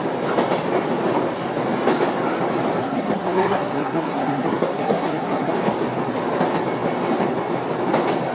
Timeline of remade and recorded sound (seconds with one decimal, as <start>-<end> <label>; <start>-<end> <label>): 0.0-2.8 recorded; 2.8-5.5 remade; 5.5-8.3 recorded